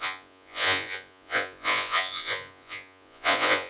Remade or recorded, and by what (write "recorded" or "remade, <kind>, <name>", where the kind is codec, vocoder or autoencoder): remade, vocoder, Vocos